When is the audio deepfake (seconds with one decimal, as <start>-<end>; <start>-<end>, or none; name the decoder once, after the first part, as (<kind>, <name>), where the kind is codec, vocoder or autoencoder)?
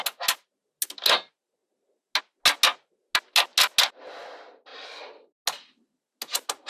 none